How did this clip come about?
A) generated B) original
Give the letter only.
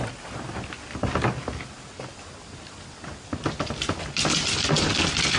B